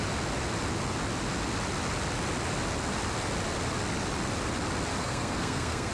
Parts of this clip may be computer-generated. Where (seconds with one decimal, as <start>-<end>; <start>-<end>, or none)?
5.0-5.9